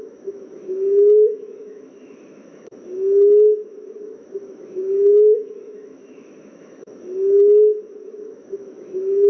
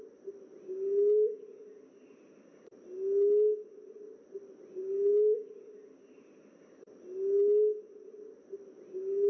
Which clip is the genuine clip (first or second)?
second